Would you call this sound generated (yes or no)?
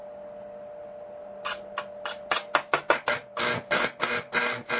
no